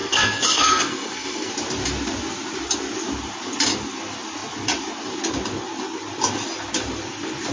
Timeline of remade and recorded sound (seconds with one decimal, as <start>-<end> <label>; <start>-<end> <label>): 0.0-1.5 remade; 1.5-7.5 recorded